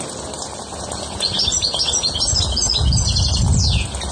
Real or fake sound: real